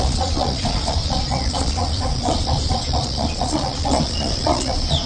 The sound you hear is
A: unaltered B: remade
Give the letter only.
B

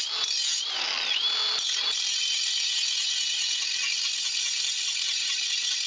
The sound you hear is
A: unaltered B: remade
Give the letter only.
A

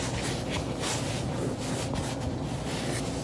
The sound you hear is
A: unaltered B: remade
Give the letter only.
A